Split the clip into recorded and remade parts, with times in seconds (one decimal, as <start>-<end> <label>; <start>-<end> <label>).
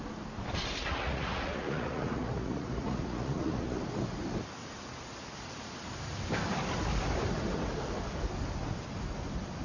0.0-0.8 recorded; 0.8-3.8 remade; 3.8-4.6 recorded; 4.6-5.7 remade; 5.7-9.6 recorded